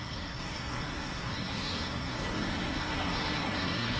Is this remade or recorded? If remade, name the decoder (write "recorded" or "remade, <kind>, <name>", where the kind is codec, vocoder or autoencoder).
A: remade, codec, SNAC